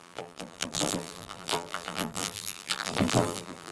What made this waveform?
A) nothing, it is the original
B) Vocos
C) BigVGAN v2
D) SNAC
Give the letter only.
C